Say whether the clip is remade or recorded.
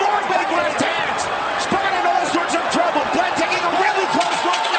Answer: remade